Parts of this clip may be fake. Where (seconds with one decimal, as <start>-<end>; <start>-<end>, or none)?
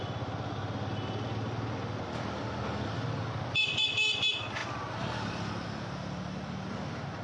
none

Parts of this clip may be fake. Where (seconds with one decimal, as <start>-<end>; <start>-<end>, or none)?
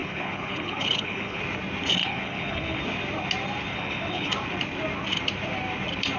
0.0-1.4; 2.0-2.8; 3.7-4.3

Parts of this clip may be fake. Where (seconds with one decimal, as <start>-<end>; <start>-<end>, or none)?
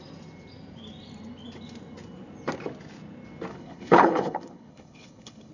3.5-5.5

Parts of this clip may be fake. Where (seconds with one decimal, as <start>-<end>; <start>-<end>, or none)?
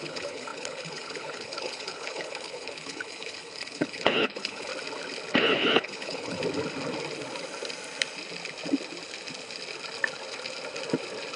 0.0-4.7; 5.4-6.4